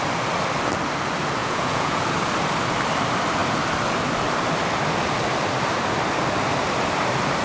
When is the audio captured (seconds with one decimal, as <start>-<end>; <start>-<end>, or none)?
0.0-1.4; 2.0-7.4